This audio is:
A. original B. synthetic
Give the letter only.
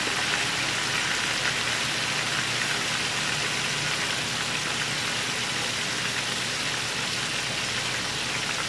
A